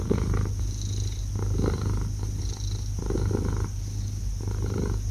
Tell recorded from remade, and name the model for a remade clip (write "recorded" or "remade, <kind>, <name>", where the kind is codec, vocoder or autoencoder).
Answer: recorded